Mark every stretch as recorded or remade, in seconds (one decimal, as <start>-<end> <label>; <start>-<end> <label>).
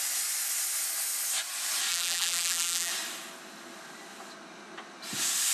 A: 0.0-1.9 recorded; 1.9-2.9 remade; 2.9-5.5 recorded